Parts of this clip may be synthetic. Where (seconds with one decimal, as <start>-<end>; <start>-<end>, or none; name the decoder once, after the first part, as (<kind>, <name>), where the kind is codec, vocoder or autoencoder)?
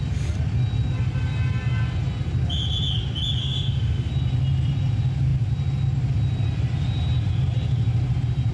3.4-4.1 (autoencoder, DAC-VAE)